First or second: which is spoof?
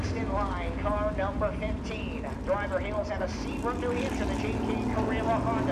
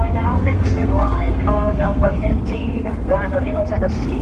second